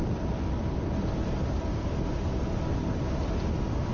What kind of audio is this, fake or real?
real